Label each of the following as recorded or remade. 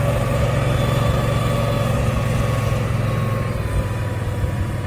recorded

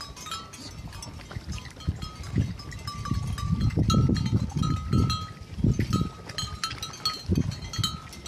recorded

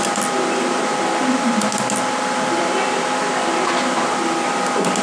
recorded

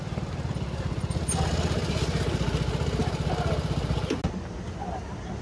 recorded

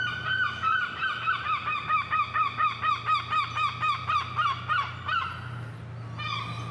recorded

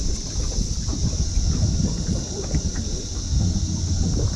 remade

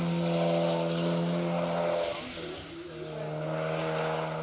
recorded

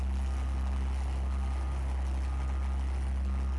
recorded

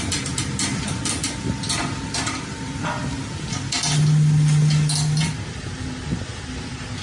recorded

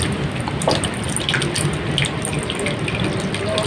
recorded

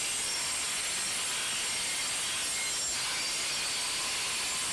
recorded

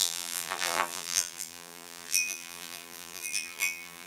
remade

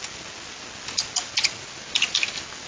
recorded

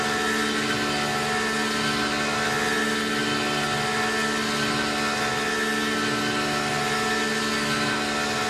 recorded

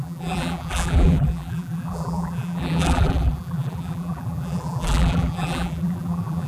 remade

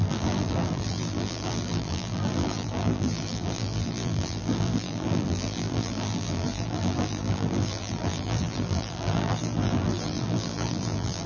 remade